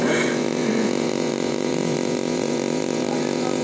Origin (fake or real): fake